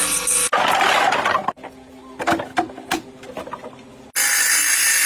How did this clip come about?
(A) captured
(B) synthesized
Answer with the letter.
A